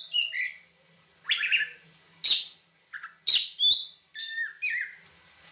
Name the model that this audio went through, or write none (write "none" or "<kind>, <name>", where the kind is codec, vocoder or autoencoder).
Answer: none